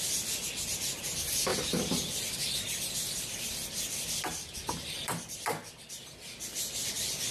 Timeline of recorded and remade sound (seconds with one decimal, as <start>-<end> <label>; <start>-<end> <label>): 0.0-1.5 recorded; 1.5-5.9 remade; 5.9-7.3 recorded